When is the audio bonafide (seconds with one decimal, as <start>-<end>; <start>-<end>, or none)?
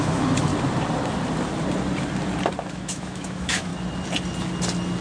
0.5-2.7; 3.7-5.0